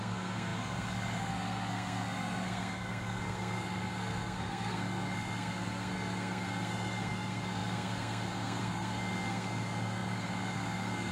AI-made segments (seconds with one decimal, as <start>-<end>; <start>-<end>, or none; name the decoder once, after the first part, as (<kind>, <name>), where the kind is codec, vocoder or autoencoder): 0.0-11.1 (codec, SNAC)